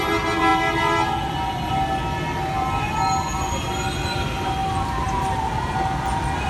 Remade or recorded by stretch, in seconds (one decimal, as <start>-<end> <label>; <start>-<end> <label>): 0.0-6.5 recorded